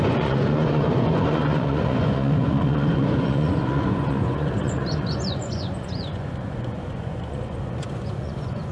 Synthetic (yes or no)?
yes